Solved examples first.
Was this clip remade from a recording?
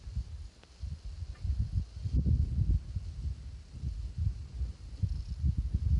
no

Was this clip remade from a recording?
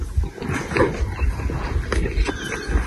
no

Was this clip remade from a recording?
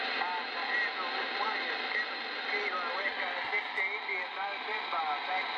no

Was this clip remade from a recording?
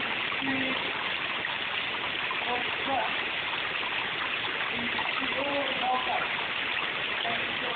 no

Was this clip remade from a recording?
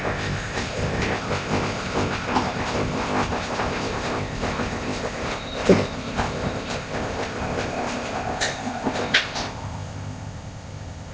yes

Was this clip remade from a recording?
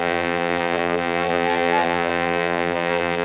yes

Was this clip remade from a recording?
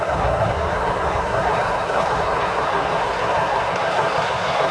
yes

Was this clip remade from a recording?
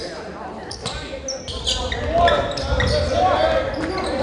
no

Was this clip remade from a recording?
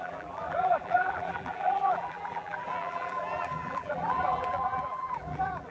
yes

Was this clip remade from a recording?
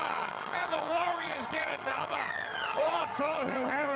yes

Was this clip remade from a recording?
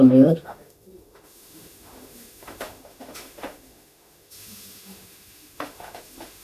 yes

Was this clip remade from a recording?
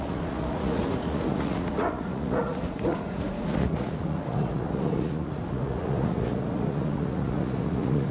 yes